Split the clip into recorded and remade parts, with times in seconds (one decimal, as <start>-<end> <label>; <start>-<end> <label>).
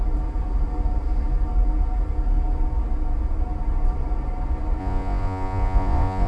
0.0-4.8 recorded; 4.8-6.3 remade